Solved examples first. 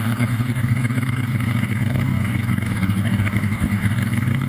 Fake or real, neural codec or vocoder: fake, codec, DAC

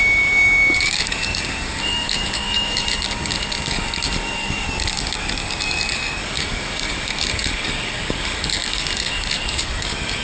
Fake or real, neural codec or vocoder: fake, codec, DAC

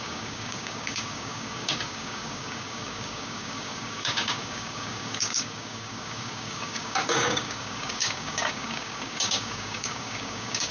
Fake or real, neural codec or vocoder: fake, codec, DAC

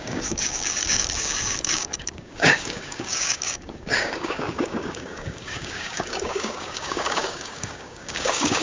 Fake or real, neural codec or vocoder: fake, codec, DAC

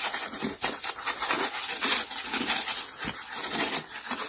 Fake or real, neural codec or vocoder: real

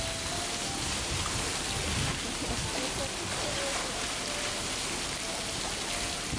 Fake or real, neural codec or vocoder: real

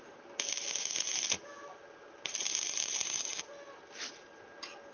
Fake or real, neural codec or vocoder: real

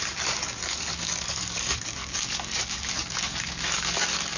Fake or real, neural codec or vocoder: fake, codec, DAC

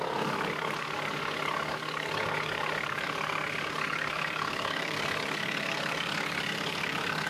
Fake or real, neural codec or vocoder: fake, codec, DAC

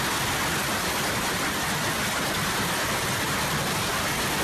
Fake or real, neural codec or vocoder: real